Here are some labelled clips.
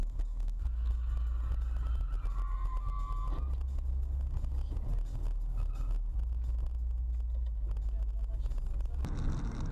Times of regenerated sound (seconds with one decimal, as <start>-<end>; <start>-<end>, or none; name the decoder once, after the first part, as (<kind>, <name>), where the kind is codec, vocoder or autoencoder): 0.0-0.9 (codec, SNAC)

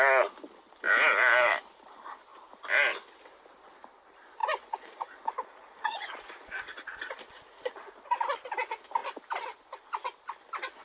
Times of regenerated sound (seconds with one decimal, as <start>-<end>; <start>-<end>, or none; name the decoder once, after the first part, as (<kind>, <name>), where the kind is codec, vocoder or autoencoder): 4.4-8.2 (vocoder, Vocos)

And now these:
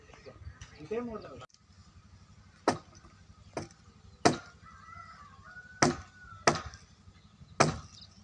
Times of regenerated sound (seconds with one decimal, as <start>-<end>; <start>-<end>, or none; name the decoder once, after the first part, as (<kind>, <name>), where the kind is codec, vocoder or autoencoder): none